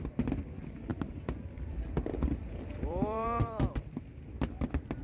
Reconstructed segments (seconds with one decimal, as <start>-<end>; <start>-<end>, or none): 0.9-3.9